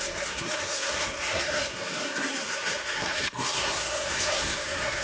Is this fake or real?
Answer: fake